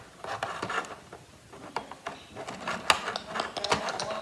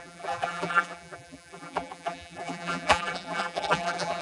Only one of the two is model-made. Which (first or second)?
second